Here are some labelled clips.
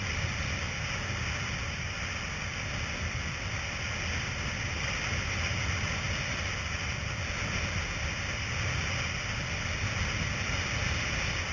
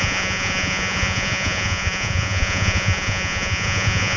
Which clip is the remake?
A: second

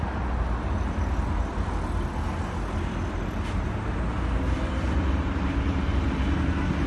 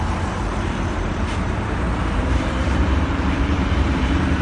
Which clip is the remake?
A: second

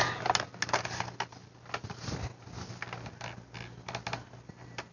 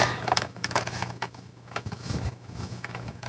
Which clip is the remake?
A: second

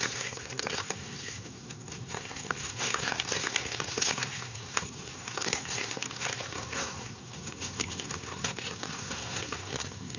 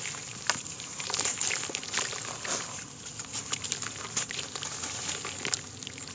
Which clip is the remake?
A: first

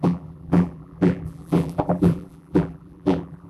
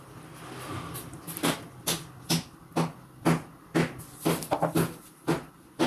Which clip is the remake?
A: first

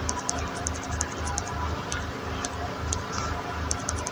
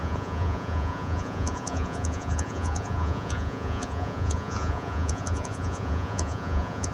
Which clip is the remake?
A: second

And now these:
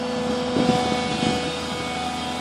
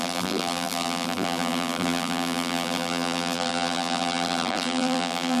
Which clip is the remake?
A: second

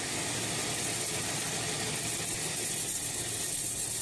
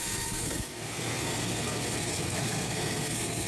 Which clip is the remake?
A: second